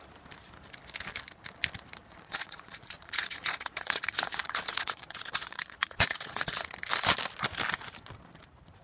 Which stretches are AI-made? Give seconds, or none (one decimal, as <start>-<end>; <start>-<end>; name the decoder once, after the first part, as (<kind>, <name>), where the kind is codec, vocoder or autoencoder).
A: 2.0-6.6 (vocoder, Vocos)